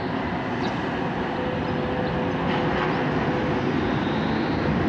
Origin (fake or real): real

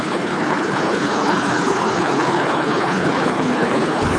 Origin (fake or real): fake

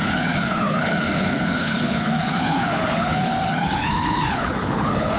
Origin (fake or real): fake